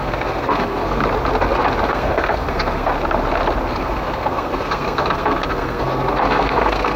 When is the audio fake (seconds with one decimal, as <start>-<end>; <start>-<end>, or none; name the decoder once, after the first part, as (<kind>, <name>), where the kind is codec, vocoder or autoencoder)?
0.0-1.0 (codec, SNAC); 1.9-2.9; 3.7-7.0